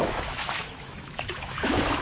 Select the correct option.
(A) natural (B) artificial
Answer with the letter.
B